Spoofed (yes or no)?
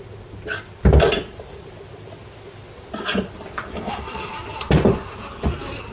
no